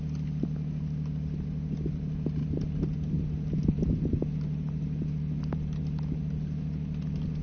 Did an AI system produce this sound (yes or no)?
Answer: no